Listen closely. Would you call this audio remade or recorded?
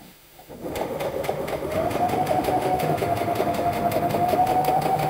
remade